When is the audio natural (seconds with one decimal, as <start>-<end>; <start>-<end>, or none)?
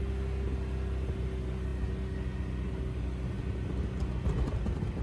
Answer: 0.0-5.0